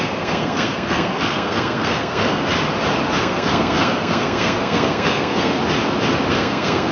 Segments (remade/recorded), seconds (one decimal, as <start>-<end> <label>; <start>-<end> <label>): 0.0-2.5 remade; 2.5-3.2 recorded; 3.2-5.6 remade; 5.6-6.3 recorded; 6.3-6.9 remade